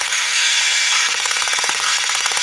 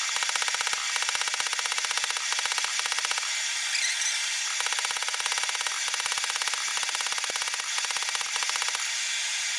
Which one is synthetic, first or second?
first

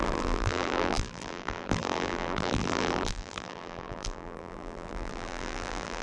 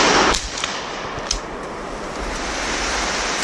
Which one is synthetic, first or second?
first